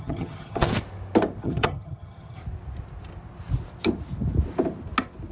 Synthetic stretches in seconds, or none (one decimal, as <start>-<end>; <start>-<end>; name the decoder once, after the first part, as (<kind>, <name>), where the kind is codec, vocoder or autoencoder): 0.0-0.7 (vocoder, HiFi-GAN); 1.4-2.4